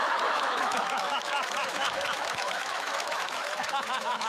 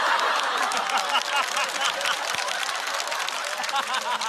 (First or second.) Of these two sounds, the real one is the second